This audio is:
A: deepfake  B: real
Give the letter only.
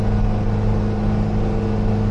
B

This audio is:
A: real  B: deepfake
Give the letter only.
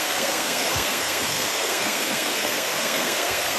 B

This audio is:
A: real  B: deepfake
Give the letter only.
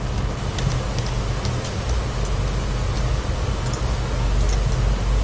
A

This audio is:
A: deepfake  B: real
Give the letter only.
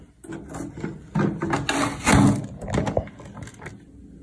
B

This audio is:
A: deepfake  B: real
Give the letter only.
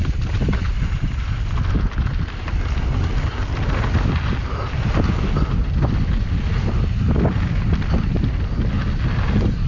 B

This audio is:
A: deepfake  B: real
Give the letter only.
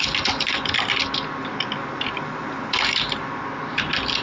B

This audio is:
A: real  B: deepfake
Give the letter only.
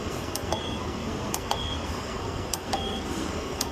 B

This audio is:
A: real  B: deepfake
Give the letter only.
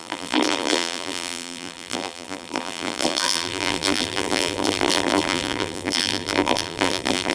B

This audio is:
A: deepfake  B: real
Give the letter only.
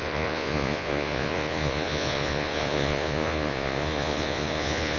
A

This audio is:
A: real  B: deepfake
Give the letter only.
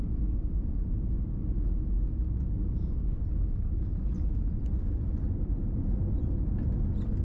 A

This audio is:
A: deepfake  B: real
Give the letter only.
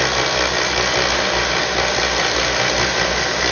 B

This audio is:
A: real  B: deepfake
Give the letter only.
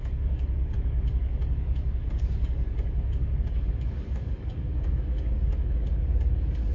B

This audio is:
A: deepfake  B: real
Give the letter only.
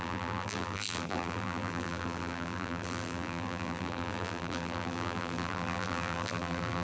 A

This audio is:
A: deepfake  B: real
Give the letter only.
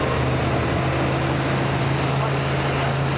B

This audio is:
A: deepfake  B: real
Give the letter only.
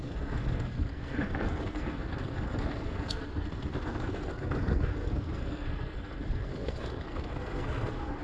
A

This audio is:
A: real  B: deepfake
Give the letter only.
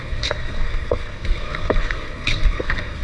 B